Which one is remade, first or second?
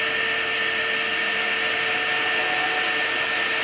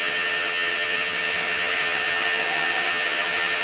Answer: second